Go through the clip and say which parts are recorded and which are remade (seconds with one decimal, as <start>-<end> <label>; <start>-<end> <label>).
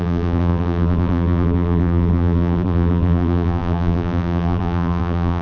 0.0-5.4 remade